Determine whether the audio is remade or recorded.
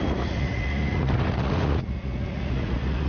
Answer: remade